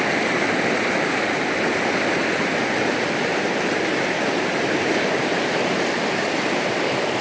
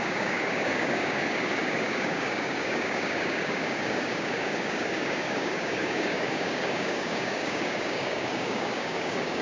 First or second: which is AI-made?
second